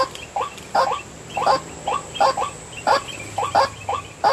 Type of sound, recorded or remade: recorded